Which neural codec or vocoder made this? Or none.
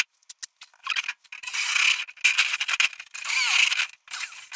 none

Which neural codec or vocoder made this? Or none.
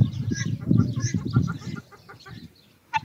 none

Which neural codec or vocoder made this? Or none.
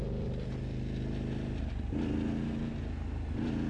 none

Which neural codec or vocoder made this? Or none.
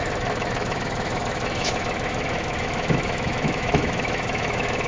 autoencoder, DAC-VAE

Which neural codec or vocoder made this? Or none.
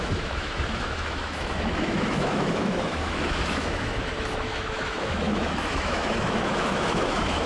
autoencoder, DAC-VAE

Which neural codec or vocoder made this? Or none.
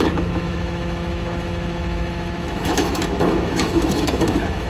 autoencoder, DAC-VAE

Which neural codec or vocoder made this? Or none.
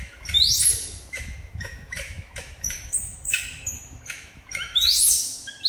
autoencoder, DAC-VAE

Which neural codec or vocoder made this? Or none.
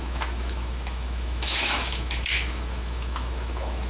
autoencoder, DAC-VAE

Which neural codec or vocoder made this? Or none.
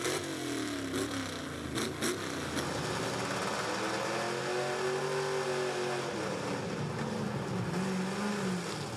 none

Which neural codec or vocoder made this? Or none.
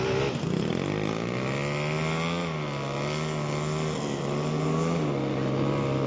none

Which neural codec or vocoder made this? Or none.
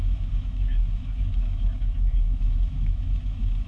autoencoder, DAC-VAE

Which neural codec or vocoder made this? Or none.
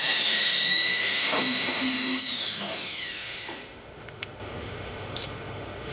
autoencoder, DAC-VAE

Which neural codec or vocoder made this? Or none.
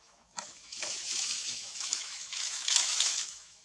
autoencoder, DAC-VAE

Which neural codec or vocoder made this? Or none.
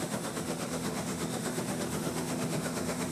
autoencoder, DAC-VAE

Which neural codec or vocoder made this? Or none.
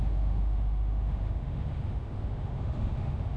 autoencoder, DAC-VAE